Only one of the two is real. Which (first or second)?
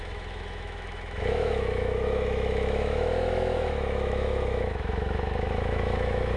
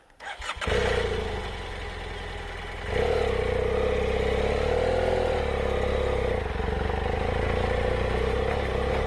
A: second